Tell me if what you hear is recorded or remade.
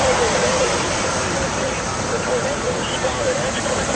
remade